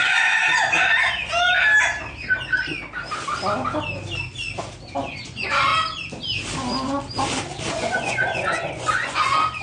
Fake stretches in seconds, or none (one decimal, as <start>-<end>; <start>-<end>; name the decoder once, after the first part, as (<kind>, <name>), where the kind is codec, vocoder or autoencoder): 0.0-0.4 (vocoder, Vocos); 5.0-5.7; 7.7-9.6